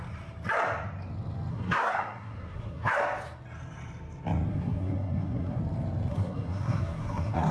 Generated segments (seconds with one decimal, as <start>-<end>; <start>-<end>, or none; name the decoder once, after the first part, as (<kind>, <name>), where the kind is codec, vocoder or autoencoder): 1.5-2.9 (codec, SNAC); 4.5-5.6; 6.1-7.5